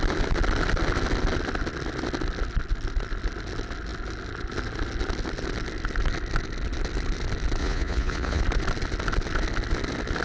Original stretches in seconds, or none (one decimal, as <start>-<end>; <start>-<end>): 0.0-7.6; 8.4-10.2